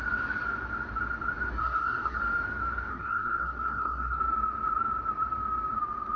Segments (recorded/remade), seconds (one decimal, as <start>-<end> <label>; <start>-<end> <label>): 0.0-1.6 recorded; 1.6-2.2 remade; 2.2-2.9 recorded; 2.9-4.2 remade; 4.2-6.2 recorded